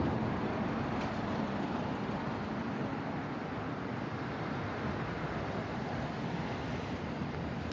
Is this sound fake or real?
real